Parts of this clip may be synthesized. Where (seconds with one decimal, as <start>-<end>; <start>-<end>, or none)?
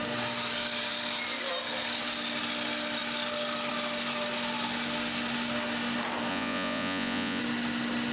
6.3-7.4